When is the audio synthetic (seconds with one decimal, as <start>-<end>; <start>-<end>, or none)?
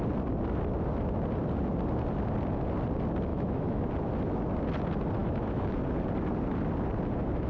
3.3-3.9; 5.2-5.7